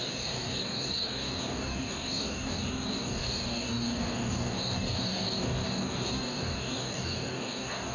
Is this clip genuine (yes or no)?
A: no